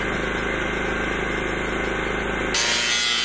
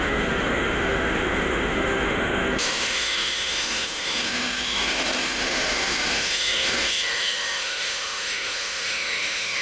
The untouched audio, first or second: first